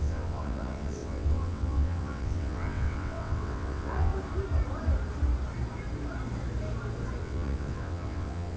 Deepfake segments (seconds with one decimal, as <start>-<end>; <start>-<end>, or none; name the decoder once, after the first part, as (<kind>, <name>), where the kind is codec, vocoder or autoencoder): 0.0-4.1 (vocoder, WaveNeXt); 7.2-8.6